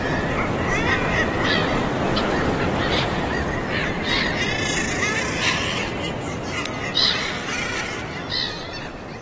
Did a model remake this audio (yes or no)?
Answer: no